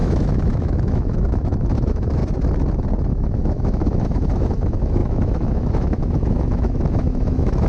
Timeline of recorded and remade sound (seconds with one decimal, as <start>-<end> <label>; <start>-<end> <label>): 0.0-2.2 remade; 2.2-3.1 recorded; 3.1-7.7 remade